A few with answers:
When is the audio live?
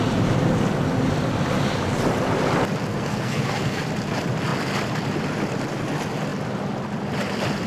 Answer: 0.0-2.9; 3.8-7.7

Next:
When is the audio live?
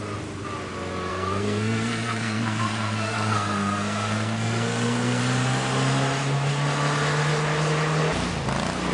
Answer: 0.0-1.1; 5.2-8.9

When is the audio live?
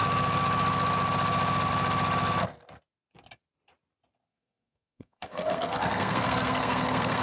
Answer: 0.0-4.3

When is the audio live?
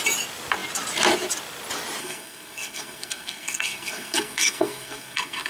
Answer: 0.0-2.0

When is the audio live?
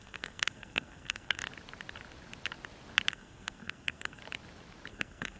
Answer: 1.4-3.1; 4.2-4.9